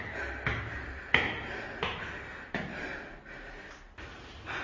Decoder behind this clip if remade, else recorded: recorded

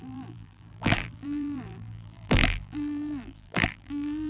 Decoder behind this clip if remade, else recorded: remade, vocoder, BigVGAN v2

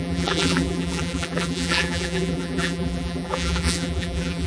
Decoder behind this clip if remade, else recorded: remade, vocoder, BigVGAN v2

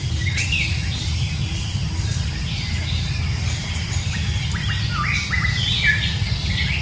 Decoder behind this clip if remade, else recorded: recorded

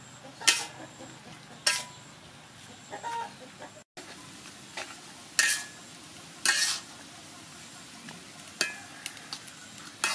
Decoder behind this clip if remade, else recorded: recorded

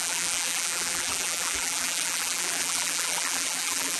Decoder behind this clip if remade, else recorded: remade, vocoder, BigVGAN v2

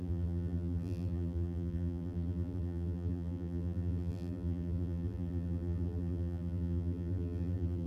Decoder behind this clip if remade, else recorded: remade, vocoder, BigVGAN v2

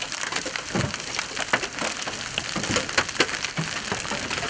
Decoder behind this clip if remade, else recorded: recorded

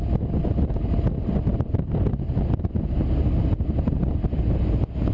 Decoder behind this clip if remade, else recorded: recorded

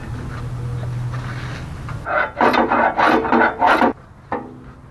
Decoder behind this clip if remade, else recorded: recorded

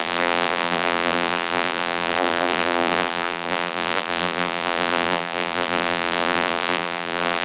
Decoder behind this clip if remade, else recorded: remade, vocoder, BigVGAN v2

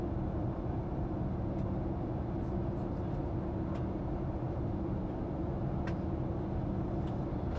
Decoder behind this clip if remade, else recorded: recorded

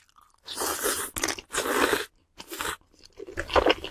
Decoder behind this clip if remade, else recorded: recorded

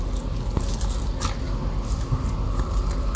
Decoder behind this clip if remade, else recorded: recorded